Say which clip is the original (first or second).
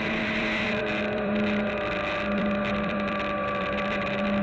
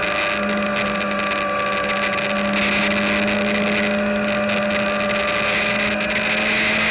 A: second